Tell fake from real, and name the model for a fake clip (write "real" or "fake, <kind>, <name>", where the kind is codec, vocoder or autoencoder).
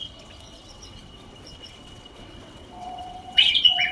fake, vocoder, WaveNeXt